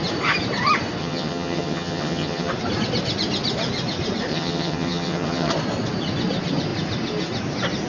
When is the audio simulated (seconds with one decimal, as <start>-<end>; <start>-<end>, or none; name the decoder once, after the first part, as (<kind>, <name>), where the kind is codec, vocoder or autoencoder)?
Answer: 1.0-2.5 (vocoder, HiFi-GAN); 4.3-5.5